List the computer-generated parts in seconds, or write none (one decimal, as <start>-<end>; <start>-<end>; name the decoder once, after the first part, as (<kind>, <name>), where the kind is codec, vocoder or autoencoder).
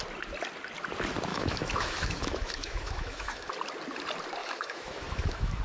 1.3-3.5 (autoencoder, DAC-VAE); 4.4-5.6